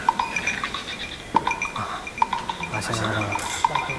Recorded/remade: recorded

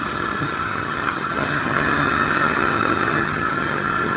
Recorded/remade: remade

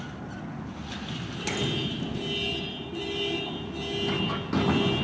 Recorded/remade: recorded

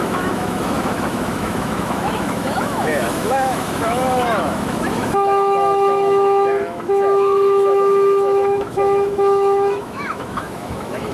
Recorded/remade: remade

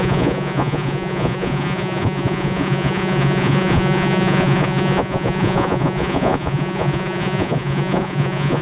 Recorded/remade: remade